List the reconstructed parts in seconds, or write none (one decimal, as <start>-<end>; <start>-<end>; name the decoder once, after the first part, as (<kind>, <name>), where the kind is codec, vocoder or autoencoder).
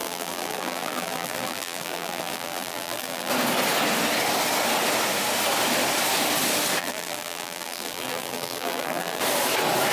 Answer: 0.0-3.3 (vocoder, BigVGAN v2); 6.8-9.2